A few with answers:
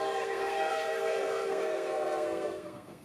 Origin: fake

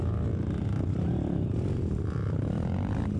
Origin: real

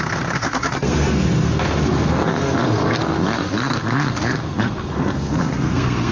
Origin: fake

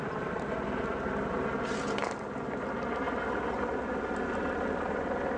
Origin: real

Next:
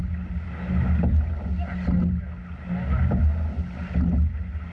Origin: real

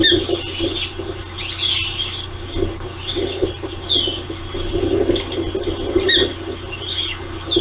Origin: real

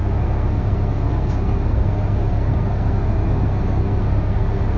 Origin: fake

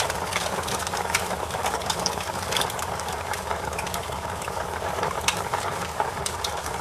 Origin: fake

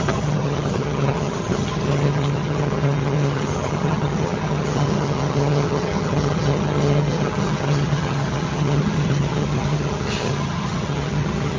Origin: fake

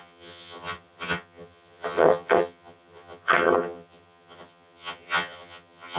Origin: fake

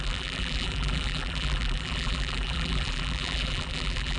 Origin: fake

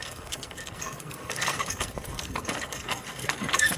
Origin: fake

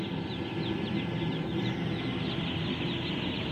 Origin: real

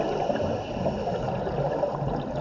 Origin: real